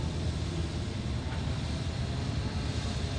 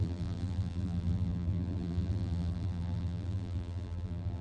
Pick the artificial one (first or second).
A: second